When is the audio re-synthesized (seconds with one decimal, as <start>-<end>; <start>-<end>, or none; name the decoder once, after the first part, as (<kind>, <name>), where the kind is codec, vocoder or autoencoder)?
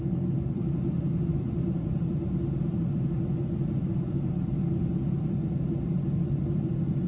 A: 1.3-2.3 (vocoder, BigVGAN v2)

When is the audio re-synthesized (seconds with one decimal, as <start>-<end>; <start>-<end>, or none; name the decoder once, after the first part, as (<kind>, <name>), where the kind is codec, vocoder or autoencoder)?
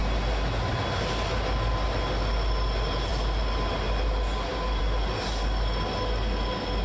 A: none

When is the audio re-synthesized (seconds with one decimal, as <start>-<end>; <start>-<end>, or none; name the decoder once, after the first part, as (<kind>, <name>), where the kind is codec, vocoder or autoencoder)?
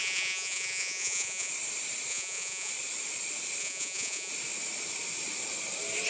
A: 0.0-1.5 (vocoder, Vocos); 2.1-2.7; 3.6-4.3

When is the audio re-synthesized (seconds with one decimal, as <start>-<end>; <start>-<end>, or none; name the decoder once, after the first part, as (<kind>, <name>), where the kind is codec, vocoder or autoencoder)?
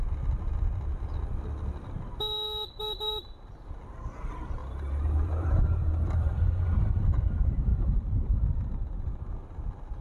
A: 2.8-3.8 (vocoder, BigVGAN v2); 4.6-7.2; 7.7-9.2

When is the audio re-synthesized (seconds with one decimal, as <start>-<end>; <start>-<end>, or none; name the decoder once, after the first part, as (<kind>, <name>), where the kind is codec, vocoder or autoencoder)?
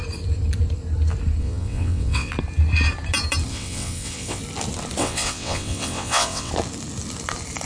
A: 1.4-2.3 (vocoder, WaveNeXt); 3.5-4.4; 5.0-6.5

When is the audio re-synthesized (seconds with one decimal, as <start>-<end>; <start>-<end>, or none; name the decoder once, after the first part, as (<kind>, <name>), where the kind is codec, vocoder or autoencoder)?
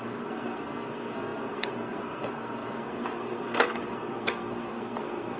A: 0.0-5.4 (codec, SNAC)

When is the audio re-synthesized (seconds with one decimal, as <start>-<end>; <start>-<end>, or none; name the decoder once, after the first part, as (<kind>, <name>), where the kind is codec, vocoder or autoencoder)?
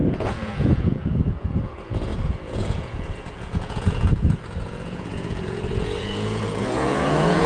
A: 0.0-7.5 (vocoder, Vocos)